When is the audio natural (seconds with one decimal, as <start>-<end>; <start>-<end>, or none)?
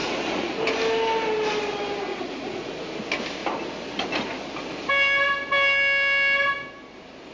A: 0.6-2.1; 2.7-7.3